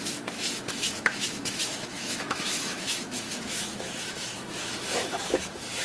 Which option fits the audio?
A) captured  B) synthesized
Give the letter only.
B